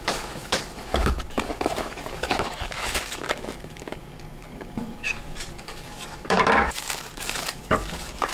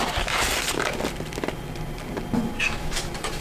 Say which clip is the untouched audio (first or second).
second